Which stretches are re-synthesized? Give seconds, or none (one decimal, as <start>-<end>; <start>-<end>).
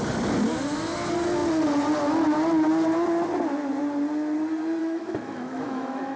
4.8-6.2